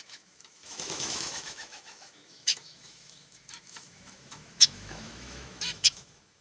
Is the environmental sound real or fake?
fake